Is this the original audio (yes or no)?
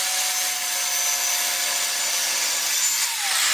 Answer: yes